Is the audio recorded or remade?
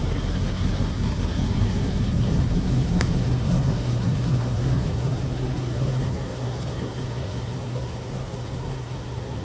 remade